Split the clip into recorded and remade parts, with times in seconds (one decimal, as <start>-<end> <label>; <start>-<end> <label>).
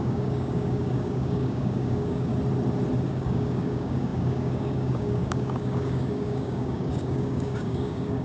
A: 0.0-2.3 remade; 2.3-3.1 recorded; 3.1-8.2 remade